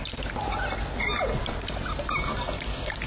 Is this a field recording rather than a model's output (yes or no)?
yes